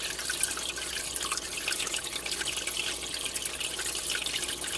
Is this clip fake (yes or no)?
no